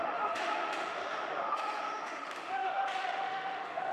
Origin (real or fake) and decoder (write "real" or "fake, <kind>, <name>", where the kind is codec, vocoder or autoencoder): fake, autoencoder, DAC-VAE